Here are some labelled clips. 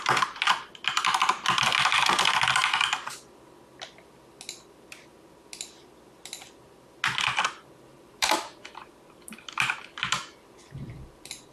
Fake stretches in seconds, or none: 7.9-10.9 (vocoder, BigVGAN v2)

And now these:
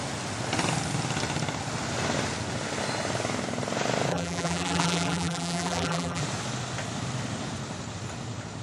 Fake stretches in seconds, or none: 4.1-6.2 (vocoder, BigVGAN v2)

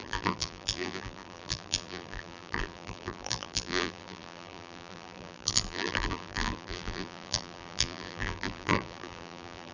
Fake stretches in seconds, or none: 0.0-9.7 (vocoder, BigVGAN v2)

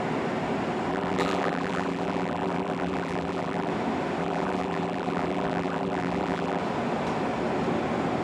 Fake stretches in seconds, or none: 0.9-3.7 (vocoder, BigVGAN v2); 4.2-6.6